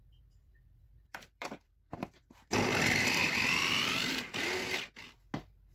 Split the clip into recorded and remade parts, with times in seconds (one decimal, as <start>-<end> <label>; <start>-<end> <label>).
0.0-0.4 recorded; 0.4-3.6 remade; 3.6-5.7 recorded

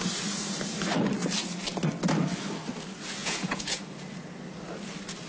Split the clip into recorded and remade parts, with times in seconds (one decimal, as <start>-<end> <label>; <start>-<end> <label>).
0.0-3.2 recorded; 3.2-3.8 remade; 3.8-5.3 recorded

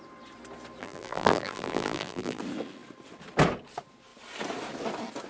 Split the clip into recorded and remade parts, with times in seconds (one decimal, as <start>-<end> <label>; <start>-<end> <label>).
0.0-0.8 recorded; 0.8-2.4 remade; 2.4-5.3 recorded

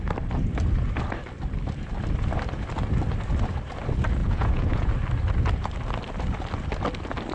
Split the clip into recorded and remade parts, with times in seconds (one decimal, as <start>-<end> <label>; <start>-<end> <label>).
0.0-4.2 recorded; 4.2-4.9 remade; 4.9-7.3 recorded

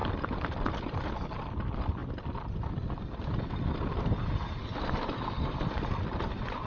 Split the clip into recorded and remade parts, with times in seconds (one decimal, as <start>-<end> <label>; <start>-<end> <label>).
0.0-1.1 remade; 1.1-6.7 recorded

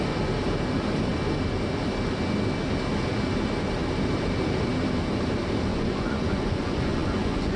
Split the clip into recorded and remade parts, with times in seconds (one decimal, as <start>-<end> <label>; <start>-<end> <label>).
0.0-5.7 recorded; 5.7-7.6 remade

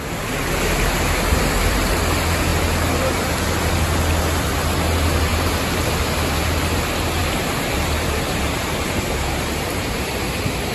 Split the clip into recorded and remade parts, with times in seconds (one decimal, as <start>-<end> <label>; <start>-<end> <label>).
0.0-5.3 recorded; 5.3-6.7 remade; 6.7-7.2 recorded; 7.2-10.1 remade; 10.1-10.7 recorded

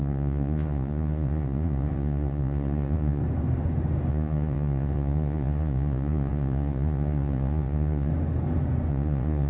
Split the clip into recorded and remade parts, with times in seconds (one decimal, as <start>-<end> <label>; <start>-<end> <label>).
0.0-3.2 remade; 3.2-4.1 recorded; 4.1-8.1 remade; 8.1-8.9 recorded; 8.9-9.5 remade